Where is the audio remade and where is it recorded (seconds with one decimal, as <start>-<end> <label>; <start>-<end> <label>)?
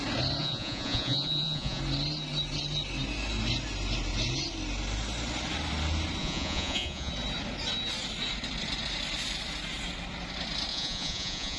0.0-0.4 recorded; 0.4-1.8 remade; 1.8-6.2 recorded; 6.2-7.1 remade; 7.1-10.7 recorded; 10.7-11.6 remade